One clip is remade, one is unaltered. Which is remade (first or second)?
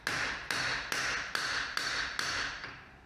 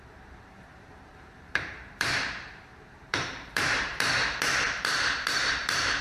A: second